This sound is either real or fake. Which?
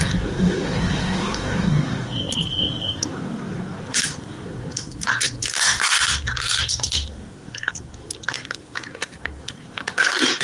fake